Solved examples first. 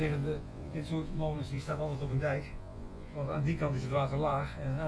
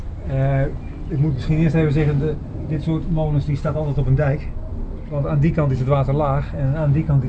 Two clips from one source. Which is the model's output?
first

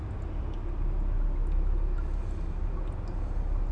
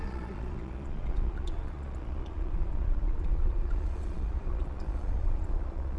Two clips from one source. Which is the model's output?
second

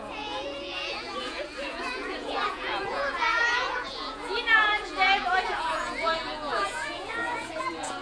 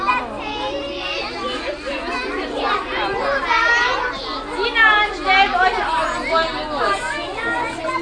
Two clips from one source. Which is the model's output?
first